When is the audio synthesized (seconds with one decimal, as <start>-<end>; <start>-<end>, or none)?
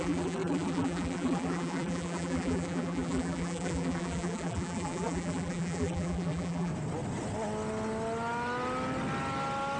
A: 0.0-6.7